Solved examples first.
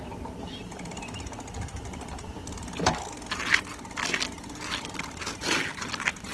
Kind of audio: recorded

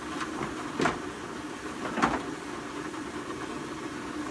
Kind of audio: recorded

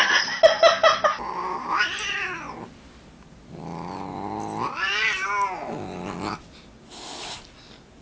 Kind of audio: recorded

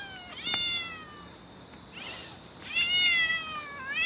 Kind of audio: recorded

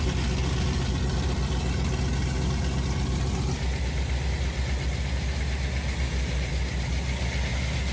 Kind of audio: recorded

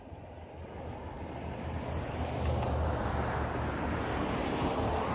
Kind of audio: recorded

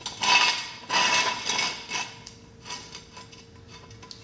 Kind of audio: recorded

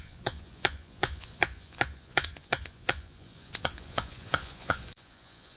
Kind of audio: remade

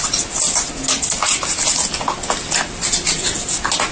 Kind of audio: recorded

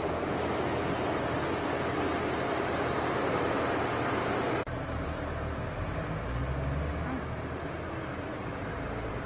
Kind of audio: recorded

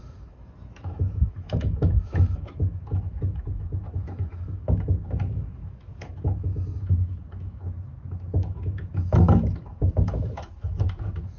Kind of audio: remade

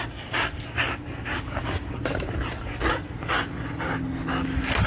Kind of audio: recorded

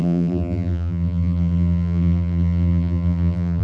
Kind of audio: remade